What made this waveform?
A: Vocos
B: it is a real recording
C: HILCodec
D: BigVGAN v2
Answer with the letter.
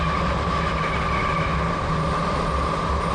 B